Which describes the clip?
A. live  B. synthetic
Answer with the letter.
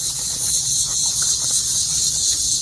B